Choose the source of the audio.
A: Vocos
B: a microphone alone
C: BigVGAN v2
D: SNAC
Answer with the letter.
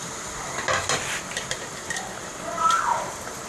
B